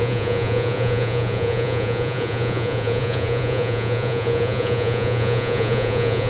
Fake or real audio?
fake